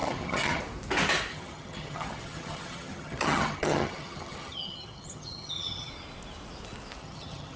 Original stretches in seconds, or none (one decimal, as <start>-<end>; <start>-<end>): 0.6-1.3; 5.9-7.0